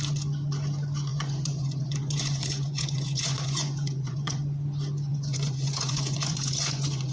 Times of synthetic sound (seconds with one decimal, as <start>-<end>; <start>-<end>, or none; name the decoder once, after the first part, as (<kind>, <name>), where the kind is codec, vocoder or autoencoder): 1.1-4.4 (vocoder, Vocos); 5.1-7.1